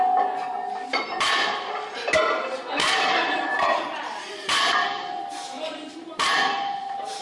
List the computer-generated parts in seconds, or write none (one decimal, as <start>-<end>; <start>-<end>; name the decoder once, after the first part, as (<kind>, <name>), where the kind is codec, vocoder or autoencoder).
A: 0.6-1.3 (vocoder, BigVGAN v2); 2.8-7.2